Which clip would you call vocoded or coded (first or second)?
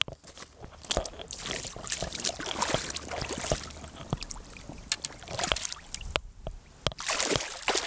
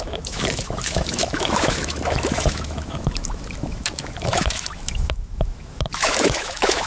second